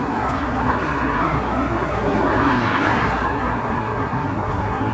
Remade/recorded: remade